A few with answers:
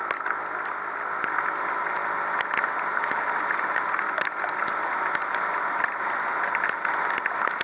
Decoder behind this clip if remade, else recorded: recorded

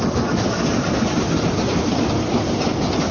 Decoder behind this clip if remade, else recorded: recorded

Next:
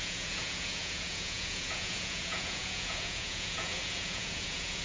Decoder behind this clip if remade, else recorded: remade, vocoder, Vocos